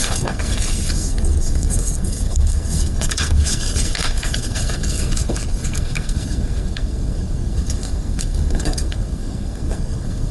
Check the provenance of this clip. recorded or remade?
remade